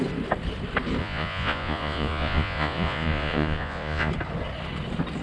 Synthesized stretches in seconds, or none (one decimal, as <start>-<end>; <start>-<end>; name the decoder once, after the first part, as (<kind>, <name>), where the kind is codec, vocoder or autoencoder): 1.0-4.1 (vocoder, Vocos)